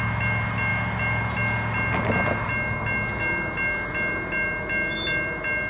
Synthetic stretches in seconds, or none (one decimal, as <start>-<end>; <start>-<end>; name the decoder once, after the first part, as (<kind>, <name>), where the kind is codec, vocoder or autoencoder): none